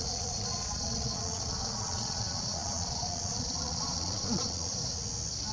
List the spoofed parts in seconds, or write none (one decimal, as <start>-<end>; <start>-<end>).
0.0-4.8